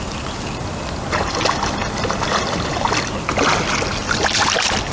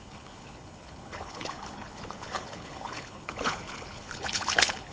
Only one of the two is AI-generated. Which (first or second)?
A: second